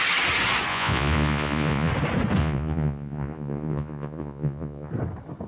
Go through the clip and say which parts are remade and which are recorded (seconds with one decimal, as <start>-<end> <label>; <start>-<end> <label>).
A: 0.0-0.7 recorded; 0.7-1.9 remade; 1.9-2.4 recorded; 2.4-4.9 remade; 4.9-5.5 recorded